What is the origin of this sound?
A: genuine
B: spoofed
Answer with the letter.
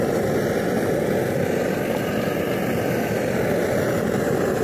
A